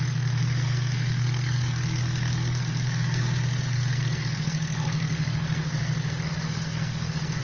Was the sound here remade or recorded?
remade